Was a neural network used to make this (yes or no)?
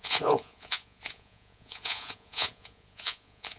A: yes